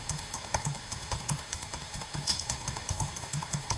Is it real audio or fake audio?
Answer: fake